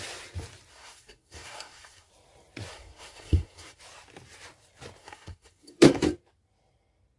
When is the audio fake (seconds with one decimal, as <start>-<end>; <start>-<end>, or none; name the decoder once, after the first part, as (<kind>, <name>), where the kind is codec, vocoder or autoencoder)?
0.7-2.1 (codec, SNAC); 2.7-3.8; 5.0-6.0